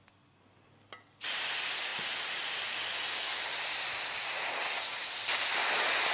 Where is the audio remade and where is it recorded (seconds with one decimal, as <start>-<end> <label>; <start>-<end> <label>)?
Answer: 0.0-6.1 recorded

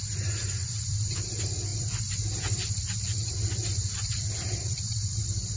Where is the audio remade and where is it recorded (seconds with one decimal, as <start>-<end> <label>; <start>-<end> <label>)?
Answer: 0.0-5.6 remade

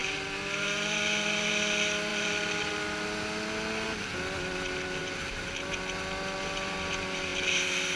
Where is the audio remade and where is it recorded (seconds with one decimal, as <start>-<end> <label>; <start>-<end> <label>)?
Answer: 0.0-1.5 remade; 1.5-2.1 recorded; 2.1-2.7 remade; 2.7-5.0 recorded; 5.0-5.7 remade; 5.7-8.0 recorded

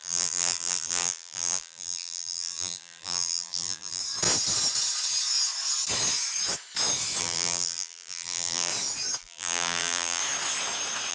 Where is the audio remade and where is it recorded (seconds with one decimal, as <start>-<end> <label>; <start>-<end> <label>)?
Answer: 0.0-4.0 remade; 4.0-7.2 recorded; 7.2-8.7 remade; 8.7-9.2 recorded; 9.2-10.2 remade; 10.2-11.1 recorded

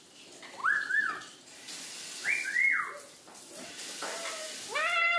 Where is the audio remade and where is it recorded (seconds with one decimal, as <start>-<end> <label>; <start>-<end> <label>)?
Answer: 0.0-5.2 recorded

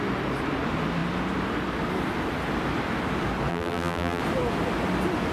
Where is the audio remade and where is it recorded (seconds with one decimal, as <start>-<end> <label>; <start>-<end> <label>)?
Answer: 0.0-3.5 recorded; 3.5-4.2 remade; 4.2-5.3 recorded